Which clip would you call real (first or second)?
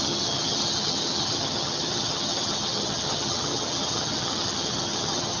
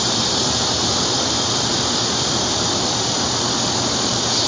second